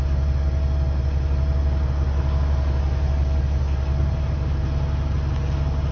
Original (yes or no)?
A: yes